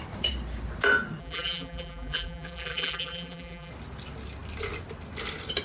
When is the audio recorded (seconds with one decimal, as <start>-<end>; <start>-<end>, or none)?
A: 0.0-1.2; 3.7-5.6